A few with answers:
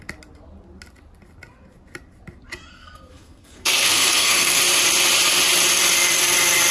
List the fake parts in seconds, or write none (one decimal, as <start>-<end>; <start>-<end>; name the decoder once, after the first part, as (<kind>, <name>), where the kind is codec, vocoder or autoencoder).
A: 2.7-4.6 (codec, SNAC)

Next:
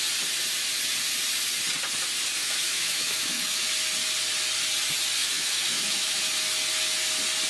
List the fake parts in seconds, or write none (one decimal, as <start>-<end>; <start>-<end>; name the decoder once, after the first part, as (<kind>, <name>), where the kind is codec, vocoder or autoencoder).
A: 2.4-3.7 (autoencoder, DAC-VAE); 5.2-6.2

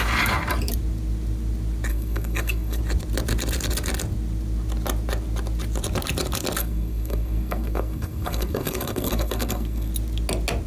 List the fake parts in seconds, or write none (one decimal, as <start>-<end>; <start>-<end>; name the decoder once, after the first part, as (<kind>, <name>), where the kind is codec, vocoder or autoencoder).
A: 1.9-2.8 (codec, SNAC); 6.6-9.9